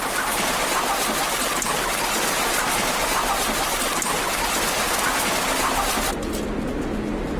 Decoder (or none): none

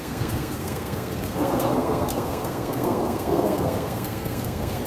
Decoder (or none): codec, SNAC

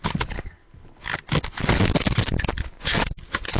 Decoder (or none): none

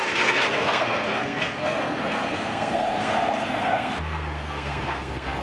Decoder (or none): codec, SNAC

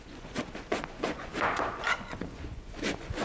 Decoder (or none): vocoder, Vocos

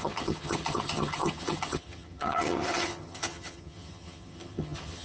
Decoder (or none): vocoder, HiFi-GAN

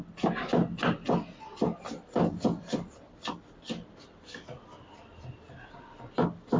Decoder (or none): none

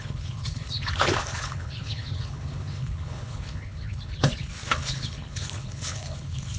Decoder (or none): codec, HILCodec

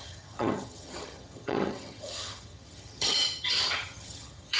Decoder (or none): vocoder, HiFi-GAN